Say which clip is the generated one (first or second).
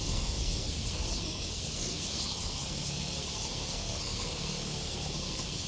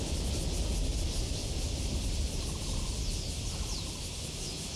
first